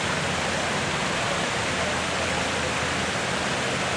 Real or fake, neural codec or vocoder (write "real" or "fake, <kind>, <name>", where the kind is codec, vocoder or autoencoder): real